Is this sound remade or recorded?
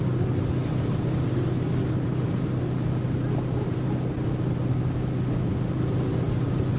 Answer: recorded